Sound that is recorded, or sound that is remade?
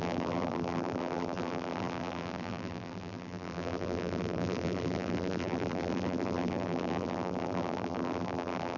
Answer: remade